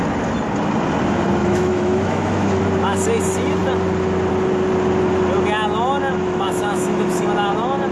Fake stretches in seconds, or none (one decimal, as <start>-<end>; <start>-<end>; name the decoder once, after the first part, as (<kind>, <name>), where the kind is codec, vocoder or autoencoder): 1.4-2.6 (autoencoder, DAC-VAE); 6.1-7.3

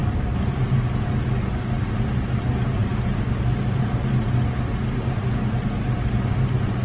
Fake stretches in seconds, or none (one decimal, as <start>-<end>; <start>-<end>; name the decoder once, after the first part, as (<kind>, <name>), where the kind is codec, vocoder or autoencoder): none

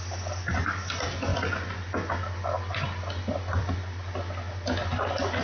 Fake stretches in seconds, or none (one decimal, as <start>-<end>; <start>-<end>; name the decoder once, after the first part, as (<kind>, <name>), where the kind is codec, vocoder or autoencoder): none

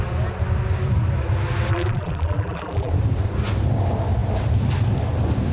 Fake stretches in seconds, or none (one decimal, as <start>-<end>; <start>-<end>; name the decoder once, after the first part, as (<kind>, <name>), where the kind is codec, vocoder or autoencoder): 1.7-2.9 (vocoder, BigVGAN v2)

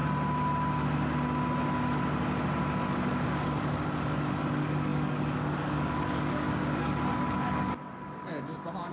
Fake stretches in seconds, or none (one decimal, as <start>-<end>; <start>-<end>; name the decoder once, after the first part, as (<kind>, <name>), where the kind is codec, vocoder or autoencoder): 2.8-8.9 (codec, DAC)

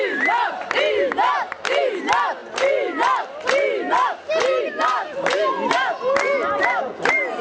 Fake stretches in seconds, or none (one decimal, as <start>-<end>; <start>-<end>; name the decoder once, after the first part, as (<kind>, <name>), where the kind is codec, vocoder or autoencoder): none

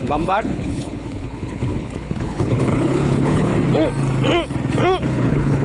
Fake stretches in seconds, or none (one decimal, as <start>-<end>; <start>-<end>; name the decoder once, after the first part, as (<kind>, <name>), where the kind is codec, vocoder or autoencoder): 0.0-3.5 (codec, HILCodec); 5.0-5.6